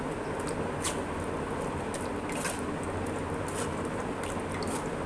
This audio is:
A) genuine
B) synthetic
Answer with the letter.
A